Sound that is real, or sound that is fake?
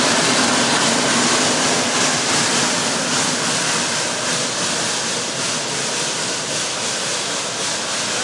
real